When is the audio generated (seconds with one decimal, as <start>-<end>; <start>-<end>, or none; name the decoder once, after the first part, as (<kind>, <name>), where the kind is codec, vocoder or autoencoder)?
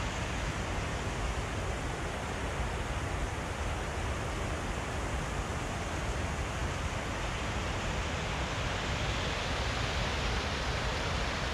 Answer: none